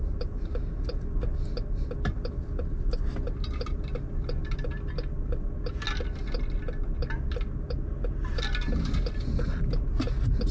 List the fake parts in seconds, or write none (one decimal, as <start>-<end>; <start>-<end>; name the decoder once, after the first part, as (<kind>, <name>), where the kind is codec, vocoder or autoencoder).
none